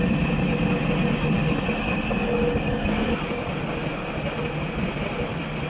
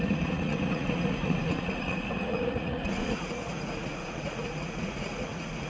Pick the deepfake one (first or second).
second